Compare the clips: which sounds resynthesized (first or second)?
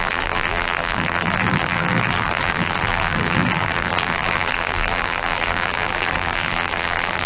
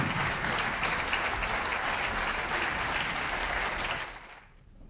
first